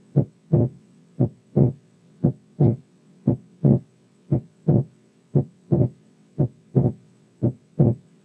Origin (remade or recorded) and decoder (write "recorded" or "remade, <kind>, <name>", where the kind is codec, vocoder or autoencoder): remade, vocoder, WaveNeXt